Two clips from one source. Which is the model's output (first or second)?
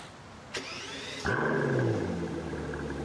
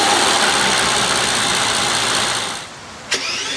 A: second